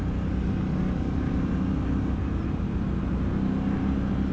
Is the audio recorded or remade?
recorded